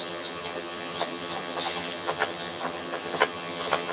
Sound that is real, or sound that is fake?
fake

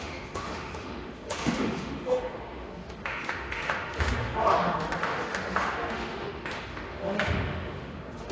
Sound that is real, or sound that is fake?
fake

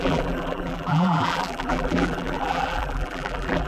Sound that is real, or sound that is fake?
fake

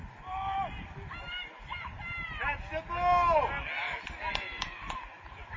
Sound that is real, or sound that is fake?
real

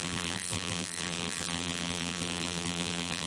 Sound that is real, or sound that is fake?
fake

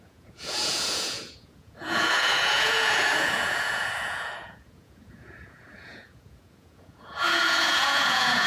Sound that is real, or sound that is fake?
fake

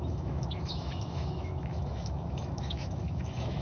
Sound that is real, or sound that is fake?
fake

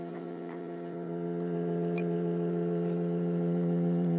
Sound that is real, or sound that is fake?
fake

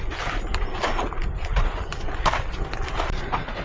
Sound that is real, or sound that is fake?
real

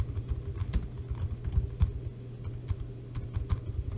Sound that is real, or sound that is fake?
real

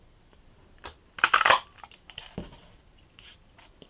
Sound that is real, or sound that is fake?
fake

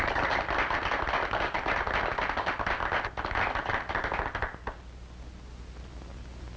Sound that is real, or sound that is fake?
real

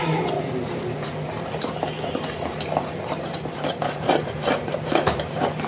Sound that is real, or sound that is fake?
fake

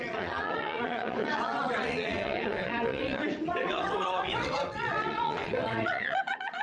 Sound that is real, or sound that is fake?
fake